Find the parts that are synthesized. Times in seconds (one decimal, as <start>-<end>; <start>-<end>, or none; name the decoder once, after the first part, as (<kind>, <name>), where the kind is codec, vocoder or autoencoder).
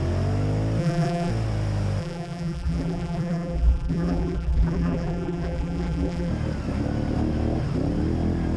0.8-1.3 (vocoder, BigVGAN v2); 2.0-6.3